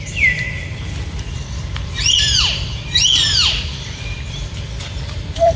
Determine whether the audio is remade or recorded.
remade